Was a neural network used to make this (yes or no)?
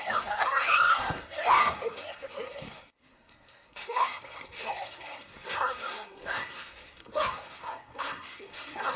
yes